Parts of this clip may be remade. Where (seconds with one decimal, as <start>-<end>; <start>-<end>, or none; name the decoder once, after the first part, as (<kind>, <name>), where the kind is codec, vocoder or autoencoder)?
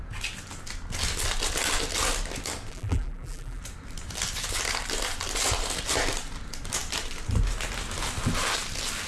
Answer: 2.7-3.6 (vocoder, BigVGAN v2)